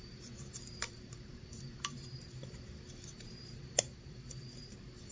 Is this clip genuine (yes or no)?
no